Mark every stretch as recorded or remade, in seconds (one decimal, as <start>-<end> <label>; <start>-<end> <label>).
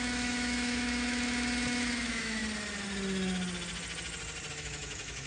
0.0-2.4 remade; 2.4-4.5 recorded; 4.5-5.3 remade